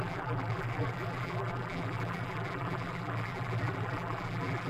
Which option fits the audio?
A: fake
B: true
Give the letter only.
A